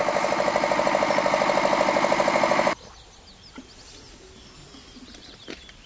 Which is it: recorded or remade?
recorded